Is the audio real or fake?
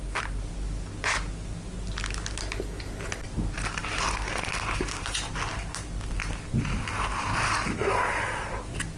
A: real